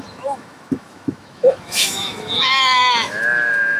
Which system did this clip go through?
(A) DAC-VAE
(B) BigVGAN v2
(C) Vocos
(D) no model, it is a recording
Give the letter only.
A